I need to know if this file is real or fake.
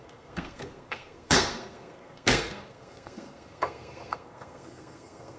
fake